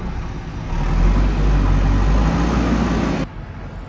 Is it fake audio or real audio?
real